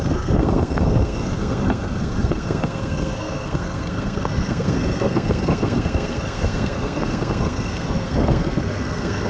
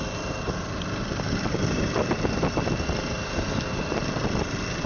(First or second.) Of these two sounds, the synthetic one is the first